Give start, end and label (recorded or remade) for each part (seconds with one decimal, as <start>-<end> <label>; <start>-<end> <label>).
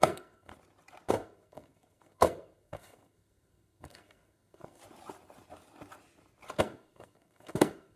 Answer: 0.0-0.5 remade; 0.5-1.1 recorded; 1.1-4.8 remade; 4.8-6.6 recorded; 6.6-8.0 remade